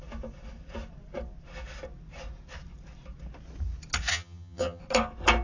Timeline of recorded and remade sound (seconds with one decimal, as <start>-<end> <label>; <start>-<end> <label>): 0.0-4.1 recorded; 4.1-4.8 remade; 4.8-5.4 recorded